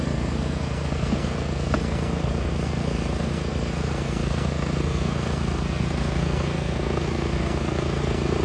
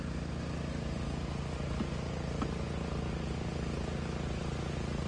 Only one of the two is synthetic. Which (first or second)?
first